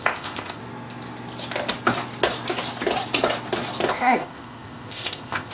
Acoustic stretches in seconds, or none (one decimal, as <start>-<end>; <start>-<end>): 0.6-3.9